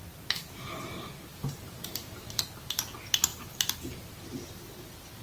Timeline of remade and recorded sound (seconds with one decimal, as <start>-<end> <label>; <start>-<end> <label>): 0.0-1.3 recorded; 1.3-2.4 remade; 2.4-3.3 recorded; 3.3-4.2 remade; 4.2-5.2 recorded